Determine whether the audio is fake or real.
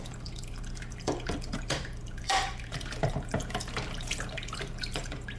fake